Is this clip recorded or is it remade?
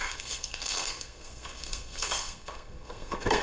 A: remade